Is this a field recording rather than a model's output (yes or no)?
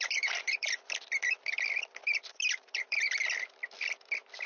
no